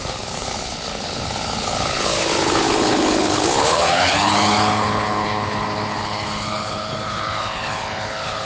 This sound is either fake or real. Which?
fake